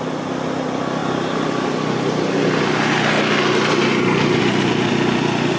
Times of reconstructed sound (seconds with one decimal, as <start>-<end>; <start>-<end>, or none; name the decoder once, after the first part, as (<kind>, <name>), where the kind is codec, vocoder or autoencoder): none